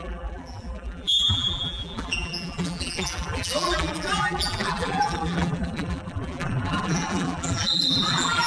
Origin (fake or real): fake